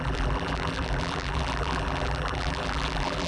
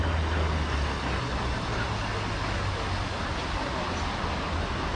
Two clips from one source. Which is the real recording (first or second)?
second